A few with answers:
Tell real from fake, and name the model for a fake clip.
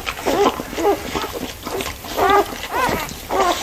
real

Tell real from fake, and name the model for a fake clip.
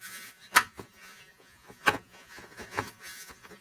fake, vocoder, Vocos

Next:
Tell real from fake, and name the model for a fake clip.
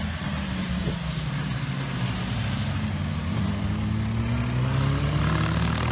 real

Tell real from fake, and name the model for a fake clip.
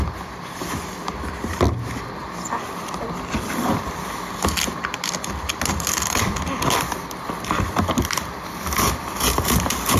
real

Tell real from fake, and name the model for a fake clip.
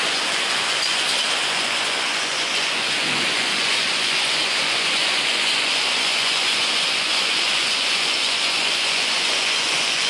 fake, vocoder, Vocos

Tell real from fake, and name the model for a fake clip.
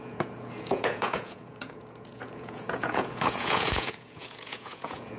fake, vocoder, Vocos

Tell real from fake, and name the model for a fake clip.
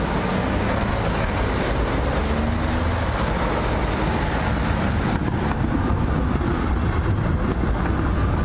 real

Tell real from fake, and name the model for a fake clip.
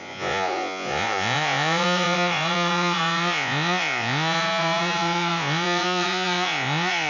fake, vocoder, Vocos